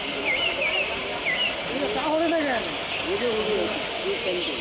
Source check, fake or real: real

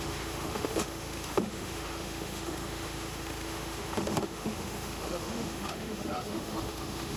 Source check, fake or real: fake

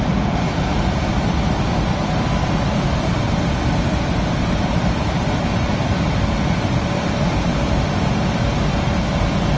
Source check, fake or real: real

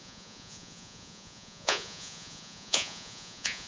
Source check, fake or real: fake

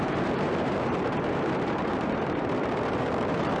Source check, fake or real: fake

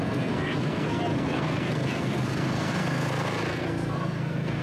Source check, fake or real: fake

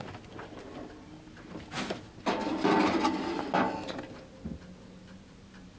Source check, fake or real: real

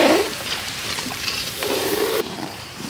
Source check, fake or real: fake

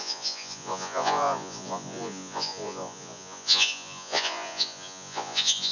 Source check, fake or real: fake